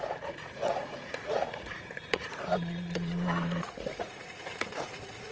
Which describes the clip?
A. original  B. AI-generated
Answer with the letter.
B